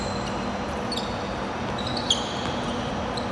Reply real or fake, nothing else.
real